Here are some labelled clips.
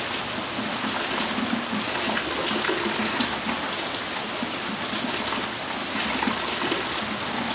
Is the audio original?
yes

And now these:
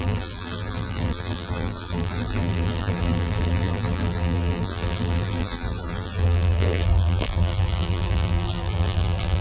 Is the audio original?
no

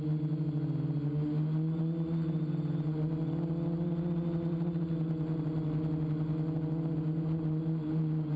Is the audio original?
yes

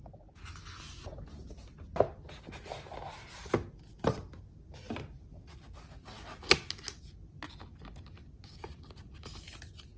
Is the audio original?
yes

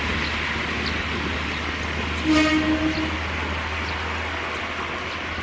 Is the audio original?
yes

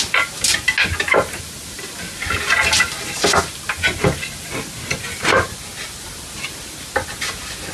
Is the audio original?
yes